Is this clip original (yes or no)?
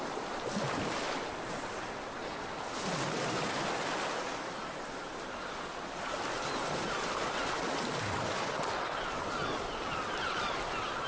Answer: yes